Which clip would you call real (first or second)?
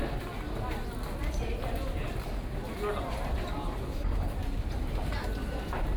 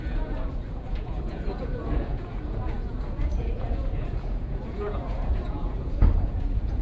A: first